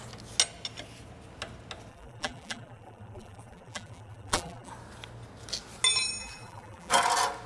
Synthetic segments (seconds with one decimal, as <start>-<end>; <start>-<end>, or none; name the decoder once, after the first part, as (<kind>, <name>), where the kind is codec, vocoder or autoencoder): 1.9-4.7 (vocoder, BigVGAN v2); 6.2-6.9